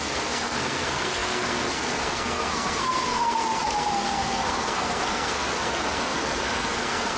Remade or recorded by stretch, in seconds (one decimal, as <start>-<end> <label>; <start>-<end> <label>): 0.0-7.2 remade